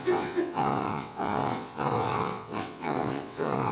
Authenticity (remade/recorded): remade